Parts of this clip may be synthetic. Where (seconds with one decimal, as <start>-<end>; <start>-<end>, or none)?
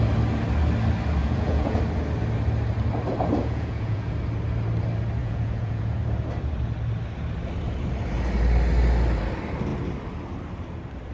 1.2-1.8; 3.4-4.1; 5.2-6.0